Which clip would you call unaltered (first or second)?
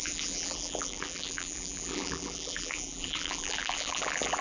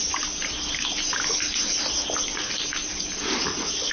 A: second